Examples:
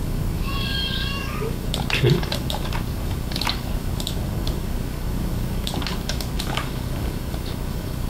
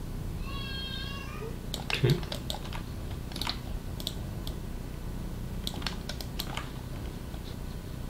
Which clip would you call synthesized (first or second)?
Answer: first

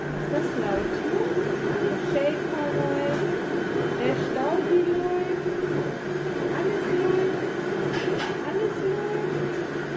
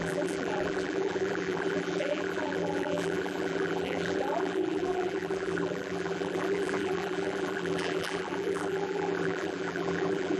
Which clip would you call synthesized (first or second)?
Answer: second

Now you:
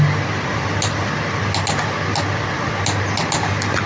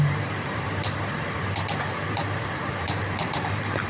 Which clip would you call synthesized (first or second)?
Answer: second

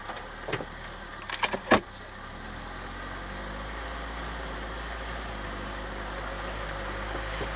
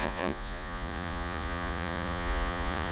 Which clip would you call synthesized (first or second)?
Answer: second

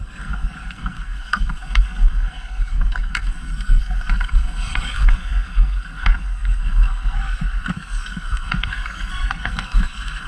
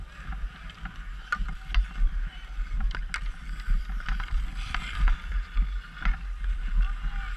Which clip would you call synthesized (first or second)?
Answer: first